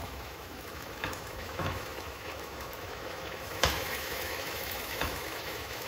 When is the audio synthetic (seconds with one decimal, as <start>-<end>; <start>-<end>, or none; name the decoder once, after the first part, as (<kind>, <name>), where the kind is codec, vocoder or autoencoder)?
0.0-5.9 (autoencoder, DAC-VAE)